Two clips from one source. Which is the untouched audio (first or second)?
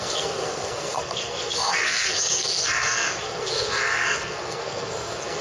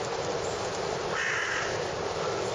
second